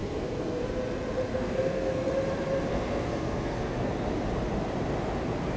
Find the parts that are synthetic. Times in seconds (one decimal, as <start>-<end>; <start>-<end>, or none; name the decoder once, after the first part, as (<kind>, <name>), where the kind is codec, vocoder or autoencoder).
0.0-0.6 (codec, SNAC); 1.3-2.1; 2.7-3.9